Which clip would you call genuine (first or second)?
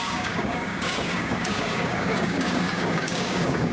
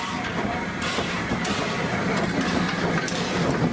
second